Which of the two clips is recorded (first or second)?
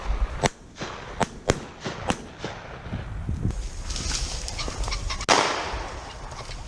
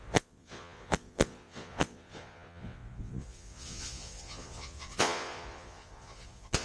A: first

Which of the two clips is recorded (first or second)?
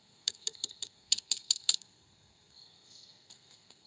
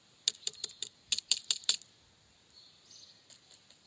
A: second